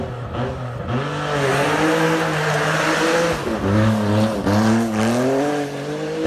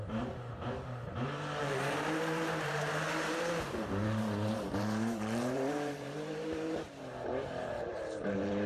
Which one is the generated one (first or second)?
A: second